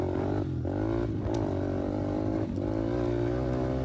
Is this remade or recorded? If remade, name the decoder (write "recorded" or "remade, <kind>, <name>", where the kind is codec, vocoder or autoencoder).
recorded